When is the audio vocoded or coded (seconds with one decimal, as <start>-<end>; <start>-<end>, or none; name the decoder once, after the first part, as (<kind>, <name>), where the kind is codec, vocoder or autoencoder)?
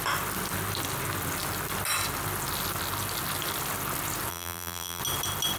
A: 4.3-5.0 (vocoder, BigVGAN v2)